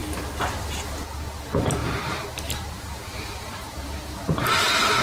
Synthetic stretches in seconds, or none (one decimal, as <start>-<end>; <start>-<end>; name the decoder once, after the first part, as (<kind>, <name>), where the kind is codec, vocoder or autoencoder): 1.8-4.4 (vocoder, BigVGAN v2)